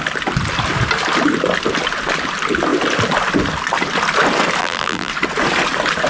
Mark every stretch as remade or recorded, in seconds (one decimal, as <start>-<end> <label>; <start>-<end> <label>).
0.0-4.6 recorded; 4.6-5.1 remade; 5.1-6.1 recorded